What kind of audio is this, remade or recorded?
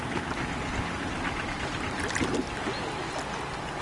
recorded